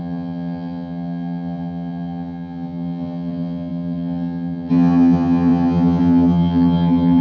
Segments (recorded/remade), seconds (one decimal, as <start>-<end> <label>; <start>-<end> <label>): 0.0-7.2 remade